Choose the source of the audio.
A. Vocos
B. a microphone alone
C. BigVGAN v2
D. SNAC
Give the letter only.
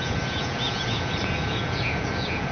A